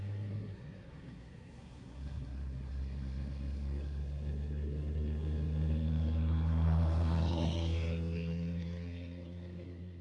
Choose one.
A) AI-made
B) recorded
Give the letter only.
A